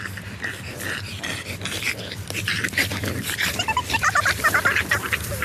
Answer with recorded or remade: remade